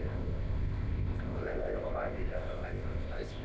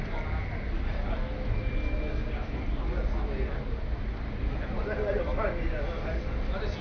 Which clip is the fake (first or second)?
first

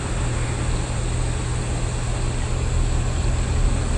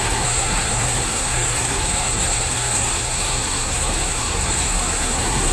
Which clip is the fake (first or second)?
second